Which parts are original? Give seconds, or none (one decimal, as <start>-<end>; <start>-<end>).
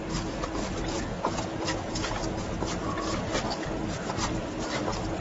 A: 0.0-0.8; 2.2-5.2